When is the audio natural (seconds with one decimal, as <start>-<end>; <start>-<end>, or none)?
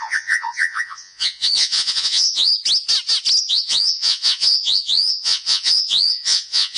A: 2.5-3.5